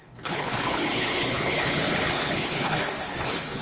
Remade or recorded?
remade